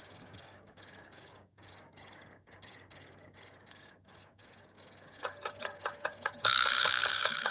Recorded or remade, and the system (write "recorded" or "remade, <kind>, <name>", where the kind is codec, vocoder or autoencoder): remade, codec, DAC